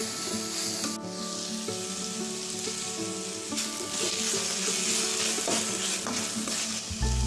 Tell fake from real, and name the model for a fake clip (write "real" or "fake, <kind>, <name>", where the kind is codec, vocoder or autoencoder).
real